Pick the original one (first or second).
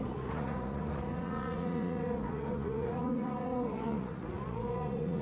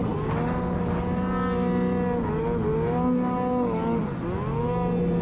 second